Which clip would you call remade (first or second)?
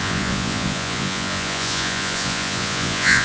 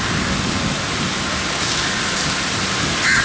first